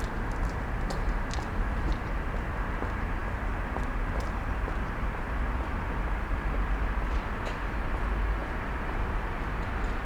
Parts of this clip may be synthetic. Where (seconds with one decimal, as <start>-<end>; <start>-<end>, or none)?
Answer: 8.4-9.1

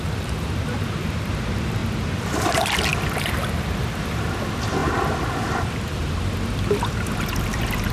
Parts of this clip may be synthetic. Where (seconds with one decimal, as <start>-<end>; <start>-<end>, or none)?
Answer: 0.0-1.8; 2.5-2.9; 3.8-4.8

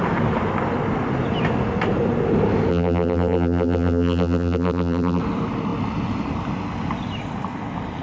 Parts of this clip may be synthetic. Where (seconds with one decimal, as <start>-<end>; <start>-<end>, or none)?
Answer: 2.7-5.2